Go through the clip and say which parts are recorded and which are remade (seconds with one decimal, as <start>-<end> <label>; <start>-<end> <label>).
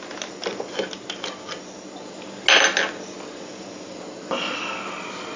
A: 0.0-5.4 recorded